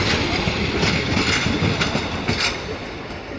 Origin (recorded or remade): recorded